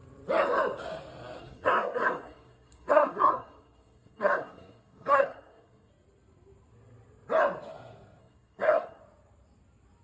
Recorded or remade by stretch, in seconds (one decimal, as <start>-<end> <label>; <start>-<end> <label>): 0.0-1.4 recorded; 1.4-5.9 remade; 5.9-8.2 recorded; 8.2-9.0 remade; 9.0-10.0 recorded